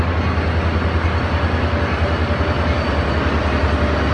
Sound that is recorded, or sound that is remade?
recorded